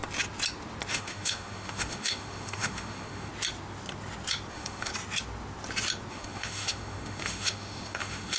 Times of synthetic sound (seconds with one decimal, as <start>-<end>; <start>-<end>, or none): 0.9-3.3; 4.5-4.9; 6.1-8.4